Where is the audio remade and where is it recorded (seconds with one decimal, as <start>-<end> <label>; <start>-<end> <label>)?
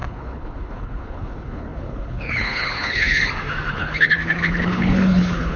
0.0-3.2 remade; 3.2-3.7 recorded; 3.7-5.6 remade